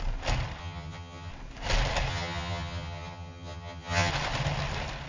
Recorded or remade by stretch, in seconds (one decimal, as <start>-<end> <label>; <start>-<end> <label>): 0.0-0.6 recorded; 0.6-1.3 remade; 1.3-2.1 recorded; 2.1-4.1 remade; 4.1-5.1 recorded